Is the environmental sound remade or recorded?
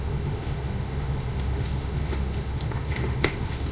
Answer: remade